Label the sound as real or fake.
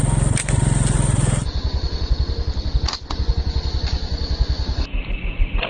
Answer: real